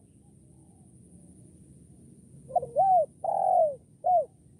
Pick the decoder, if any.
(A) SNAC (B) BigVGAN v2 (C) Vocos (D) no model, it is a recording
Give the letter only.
D